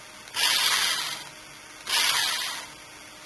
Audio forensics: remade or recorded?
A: recorded